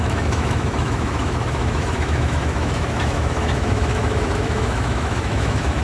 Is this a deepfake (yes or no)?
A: yes